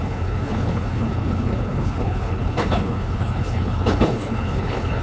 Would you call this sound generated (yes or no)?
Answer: yes